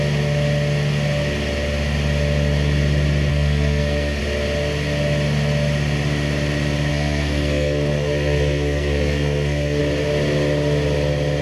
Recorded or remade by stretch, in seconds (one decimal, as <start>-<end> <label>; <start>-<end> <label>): 0.0-3.3 recorded; 3.3-4.2 remade; 4.2-6.9 recorded; 6.9-9.8 remade; 9.8-11.4 recorded